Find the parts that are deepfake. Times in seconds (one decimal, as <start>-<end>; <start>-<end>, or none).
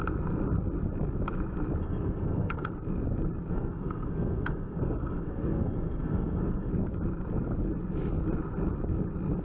1.8-2.7; 3.5-6.7